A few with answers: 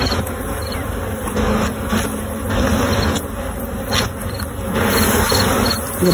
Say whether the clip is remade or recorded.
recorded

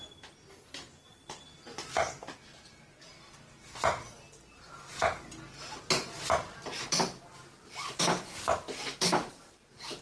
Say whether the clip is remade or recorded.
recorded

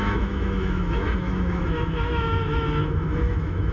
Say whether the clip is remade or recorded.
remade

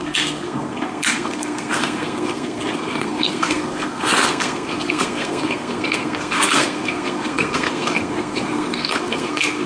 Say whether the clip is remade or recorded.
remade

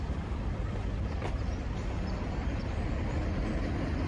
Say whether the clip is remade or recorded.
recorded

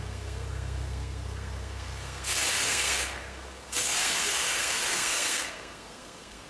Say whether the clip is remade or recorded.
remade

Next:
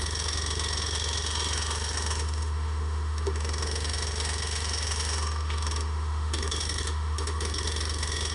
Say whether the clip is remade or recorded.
remade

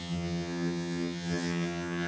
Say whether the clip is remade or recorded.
remade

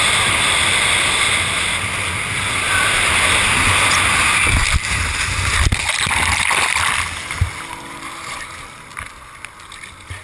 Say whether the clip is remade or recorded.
recorded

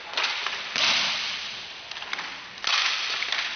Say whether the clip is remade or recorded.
recorded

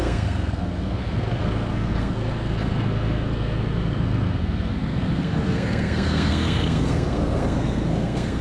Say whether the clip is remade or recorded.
remade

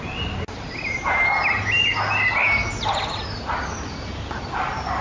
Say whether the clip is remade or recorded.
recorded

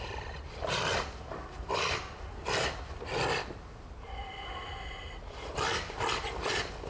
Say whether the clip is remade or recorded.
recorded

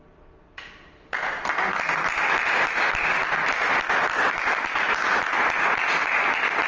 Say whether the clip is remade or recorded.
recorded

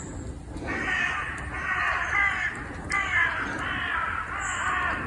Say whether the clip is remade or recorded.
recorded